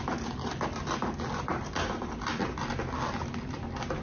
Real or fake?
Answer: real